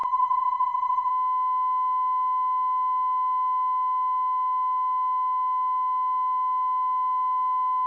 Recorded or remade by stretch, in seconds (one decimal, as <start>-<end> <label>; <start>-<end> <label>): 0.0-1.1 remade; 1.1-7.9 recorded